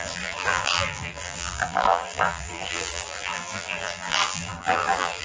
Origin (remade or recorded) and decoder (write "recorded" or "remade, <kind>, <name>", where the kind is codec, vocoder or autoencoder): remade, vocoder, BigVGAN v2